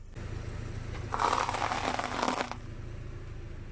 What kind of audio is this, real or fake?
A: real